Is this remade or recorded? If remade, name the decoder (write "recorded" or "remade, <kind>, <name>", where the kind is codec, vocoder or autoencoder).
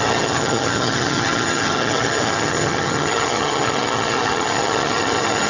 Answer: remade, vocoder, HiFi-GAN